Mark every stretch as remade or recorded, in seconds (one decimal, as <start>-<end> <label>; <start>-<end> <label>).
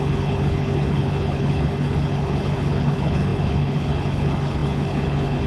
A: 0.0-5.5 remade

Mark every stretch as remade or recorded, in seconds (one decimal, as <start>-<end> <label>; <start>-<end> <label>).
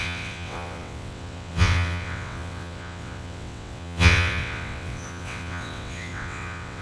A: 0.0-6.8 remade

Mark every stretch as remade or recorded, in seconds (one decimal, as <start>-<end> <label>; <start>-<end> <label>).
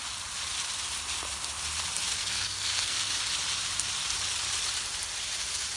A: 0.0-2.2 recorded; 2.2-3.1 remade; 3.1-5.8 recorded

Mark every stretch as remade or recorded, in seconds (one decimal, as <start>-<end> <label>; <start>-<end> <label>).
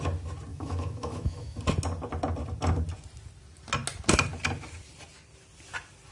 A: 0.0-0.5 recorded; 0.5-1.6 remade; 1.6-6.1 recorded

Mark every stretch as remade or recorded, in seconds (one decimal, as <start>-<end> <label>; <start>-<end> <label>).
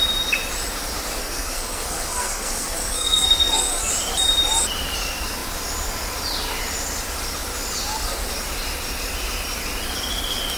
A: 0.0-1.2 recorded; 1.2-3.9 remade; 3.9-10.6 recorded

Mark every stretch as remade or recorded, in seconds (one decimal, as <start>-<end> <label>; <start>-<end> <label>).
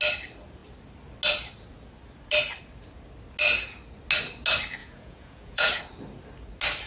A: 0.0-4.8 recorded; 4.8-5.8 remade; 5.8-6.9 recorded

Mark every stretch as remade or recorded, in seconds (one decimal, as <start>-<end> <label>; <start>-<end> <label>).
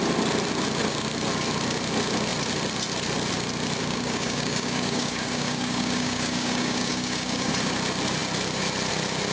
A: 0.0-3.8 recorded; 3.8-7.5 remade; 7.5-9.3 recorded